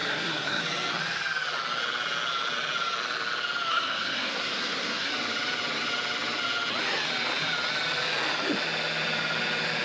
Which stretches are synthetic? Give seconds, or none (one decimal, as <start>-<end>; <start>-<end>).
0.0-0.6; 3.7-5.1